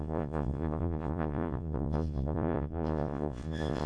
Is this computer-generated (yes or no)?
yes